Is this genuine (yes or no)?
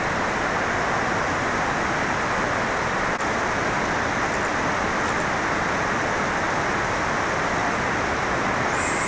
yes